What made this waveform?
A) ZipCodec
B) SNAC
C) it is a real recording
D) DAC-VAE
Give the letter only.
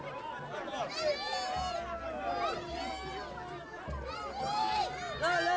C